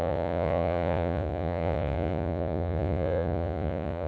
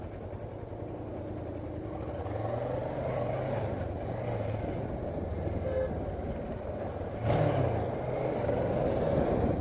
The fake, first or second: first